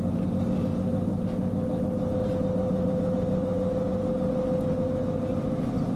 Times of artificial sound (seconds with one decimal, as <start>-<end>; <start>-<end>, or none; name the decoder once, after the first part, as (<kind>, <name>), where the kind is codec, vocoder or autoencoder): none